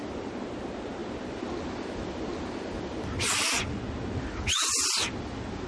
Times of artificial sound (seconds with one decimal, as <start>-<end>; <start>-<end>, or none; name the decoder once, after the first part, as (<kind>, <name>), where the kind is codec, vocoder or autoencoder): none